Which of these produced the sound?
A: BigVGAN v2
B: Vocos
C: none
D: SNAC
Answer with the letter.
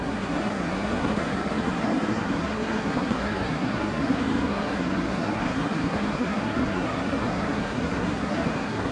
D